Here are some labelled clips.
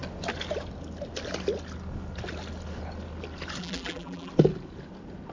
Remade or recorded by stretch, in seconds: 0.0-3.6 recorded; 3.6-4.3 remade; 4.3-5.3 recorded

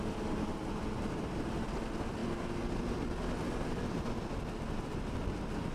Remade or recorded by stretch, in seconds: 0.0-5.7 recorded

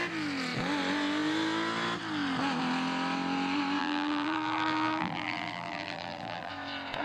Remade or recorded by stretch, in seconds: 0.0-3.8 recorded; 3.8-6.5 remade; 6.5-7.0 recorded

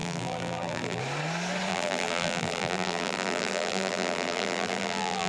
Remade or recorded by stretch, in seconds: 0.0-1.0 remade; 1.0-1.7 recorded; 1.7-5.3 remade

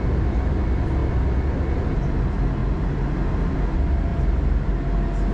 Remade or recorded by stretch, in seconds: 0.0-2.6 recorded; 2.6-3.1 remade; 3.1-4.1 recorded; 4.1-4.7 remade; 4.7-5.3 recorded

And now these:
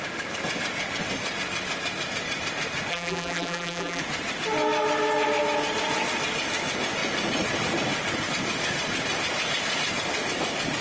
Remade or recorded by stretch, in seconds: 0.0-2.9 recorded; 2.9-4.0 remade; 4.0-10.8 recorded

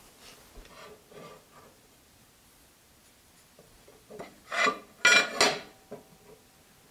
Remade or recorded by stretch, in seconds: 0.0-3.0 recorded; 3.0-4.8 remade; 4.8-6.9 recorded

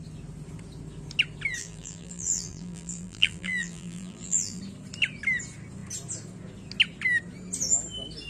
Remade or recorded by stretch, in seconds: 0.0-1.6 recorded; 1.6-4.6 remade; 4.6-8.3 recorded